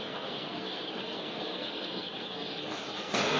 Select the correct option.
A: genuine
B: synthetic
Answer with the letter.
B